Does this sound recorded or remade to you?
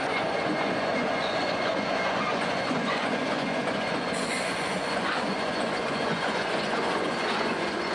remade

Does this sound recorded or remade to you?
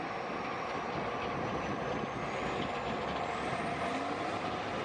recorded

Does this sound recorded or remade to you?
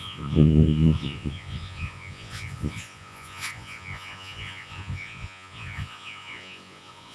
remade